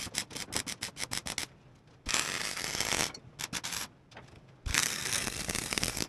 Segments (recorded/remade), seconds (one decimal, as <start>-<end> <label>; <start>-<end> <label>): 0.0-4.7 recorded; 4.7-6.1 remade